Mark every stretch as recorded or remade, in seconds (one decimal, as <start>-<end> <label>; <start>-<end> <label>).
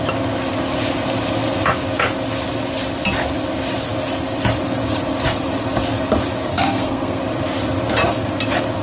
0.0-6.5 recorded; 6.5-7.2 remade; 7.2-8.8 recorded